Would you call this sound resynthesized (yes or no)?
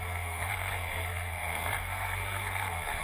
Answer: yes